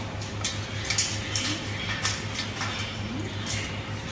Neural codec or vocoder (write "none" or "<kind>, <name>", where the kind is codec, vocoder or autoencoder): none